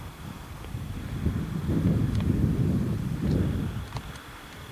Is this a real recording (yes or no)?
yes